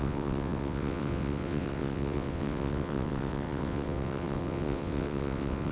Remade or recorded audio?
remade